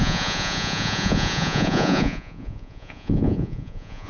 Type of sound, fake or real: fake